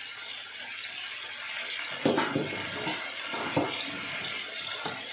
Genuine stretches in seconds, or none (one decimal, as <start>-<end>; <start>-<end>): 0.0-5.1